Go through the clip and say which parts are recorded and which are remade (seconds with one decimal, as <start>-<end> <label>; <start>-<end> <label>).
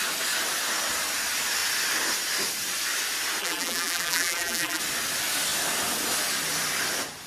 0.0-3.4 recorded; 3.4-4.8 remade; 4.8-7.3 recorded